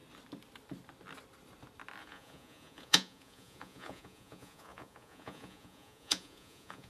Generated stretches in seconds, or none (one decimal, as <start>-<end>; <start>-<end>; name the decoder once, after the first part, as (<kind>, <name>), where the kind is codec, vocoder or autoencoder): 2.0-6.9 (vocoder, Vocos)